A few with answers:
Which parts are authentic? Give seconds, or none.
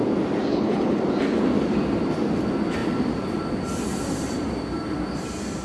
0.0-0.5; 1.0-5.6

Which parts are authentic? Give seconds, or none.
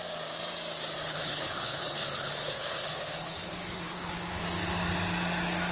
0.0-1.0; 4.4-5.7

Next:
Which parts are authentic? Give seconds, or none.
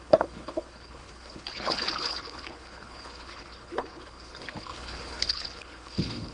none